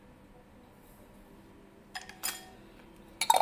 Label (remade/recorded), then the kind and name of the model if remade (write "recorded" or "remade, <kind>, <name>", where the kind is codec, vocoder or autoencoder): recorded